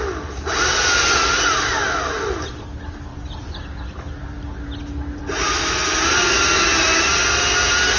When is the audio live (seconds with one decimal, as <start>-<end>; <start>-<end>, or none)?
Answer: 0.0-8.0